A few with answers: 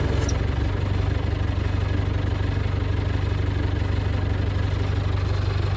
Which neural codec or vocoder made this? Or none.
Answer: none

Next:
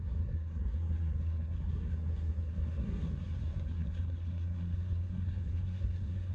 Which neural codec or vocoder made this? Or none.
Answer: codec, SNAC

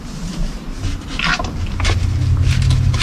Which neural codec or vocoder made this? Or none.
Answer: none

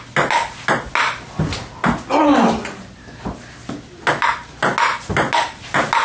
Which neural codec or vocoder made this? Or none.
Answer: none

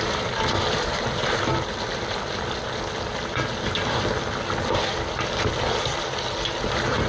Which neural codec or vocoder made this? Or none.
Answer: none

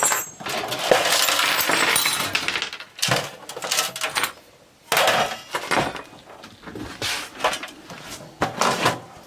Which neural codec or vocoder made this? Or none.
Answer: none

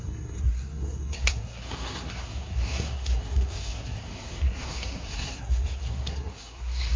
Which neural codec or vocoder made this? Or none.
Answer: codec, SNAC